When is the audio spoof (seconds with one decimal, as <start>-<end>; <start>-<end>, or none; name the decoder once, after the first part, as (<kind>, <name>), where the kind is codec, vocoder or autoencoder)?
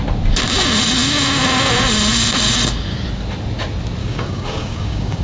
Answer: 4.0-5.2 (codec, DAC)